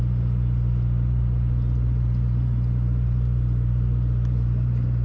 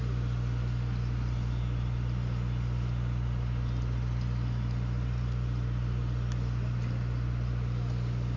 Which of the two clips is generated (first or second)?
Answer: first